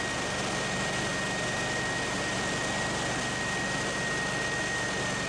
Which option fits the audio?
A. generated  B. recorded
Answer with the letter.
B